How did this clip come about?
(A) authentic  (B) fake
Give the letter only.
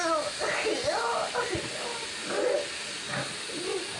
A